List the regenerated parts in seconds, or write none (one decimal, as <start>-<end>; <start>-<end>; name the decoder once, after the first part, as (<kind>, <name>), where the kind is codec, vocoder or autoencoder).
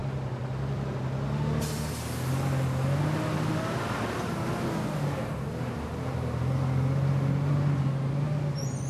none